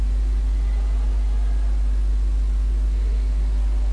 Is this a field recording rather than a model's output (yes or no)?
yes